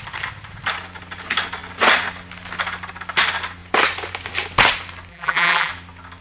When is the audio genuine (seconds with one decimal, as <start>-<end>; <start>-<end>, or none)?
0.0-5.1; 5.7-6.2